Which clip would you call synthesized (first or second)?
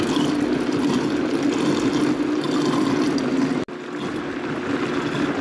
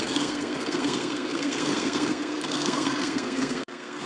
second